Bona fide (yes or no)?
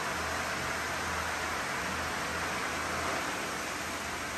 yes